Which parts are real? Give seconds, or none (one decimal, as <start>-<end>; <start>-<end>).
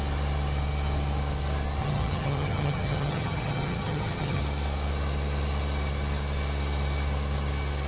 0.0-1.8; 4.4-7.9